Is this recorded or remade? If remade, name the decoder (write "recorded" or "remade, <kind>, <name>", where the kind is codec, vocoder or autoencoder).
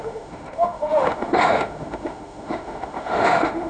remade, autoencoder, DAC-VAE